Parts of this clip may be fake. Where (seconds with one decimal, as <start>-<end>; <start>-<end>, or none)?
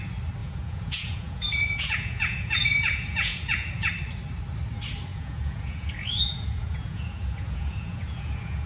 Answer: 0.4-3.9; 5.1-8.7